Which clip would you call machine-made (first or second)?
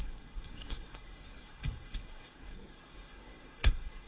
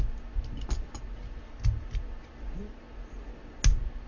first